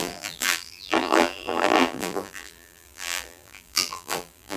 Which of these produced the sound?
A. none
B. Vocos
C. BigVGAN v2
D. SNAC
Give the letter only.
C